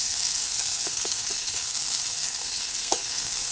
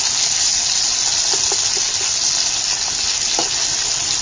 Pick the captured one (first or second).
second